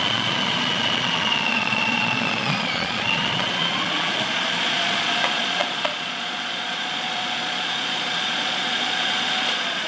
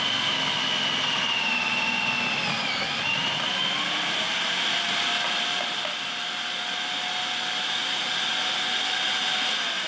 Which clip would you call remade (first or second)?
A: first